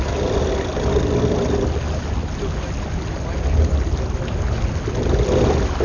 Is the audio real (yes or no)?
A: yes